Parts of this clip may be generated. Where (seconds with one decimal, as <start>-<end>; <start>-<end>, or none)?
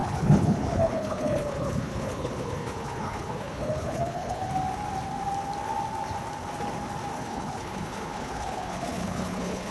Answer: 0.0-4.5; 7.1-9.7